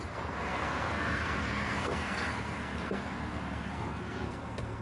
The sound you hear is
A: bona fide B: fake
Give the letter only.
B